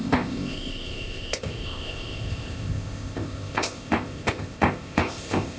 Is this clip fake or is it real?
fake